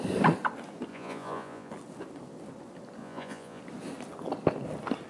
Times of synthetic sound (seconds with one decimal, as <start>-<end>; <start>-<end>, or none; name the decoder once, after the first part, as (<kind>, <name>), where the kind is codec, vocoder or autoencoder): 0.9-1.7 (vocoder, Vocos); 3.0-3.6